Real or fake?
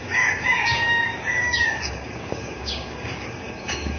fake